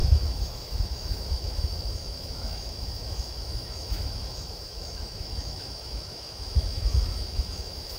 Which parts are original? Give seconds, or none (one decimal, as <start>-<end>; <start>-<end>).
none